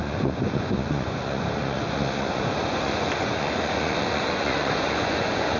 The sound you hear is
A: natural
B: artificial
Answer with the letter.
B